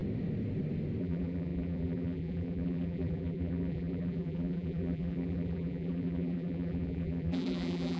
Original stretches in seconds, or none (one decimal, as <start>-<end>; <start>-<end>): 0.0-1.0